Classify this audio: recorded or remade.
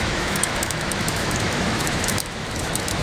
remade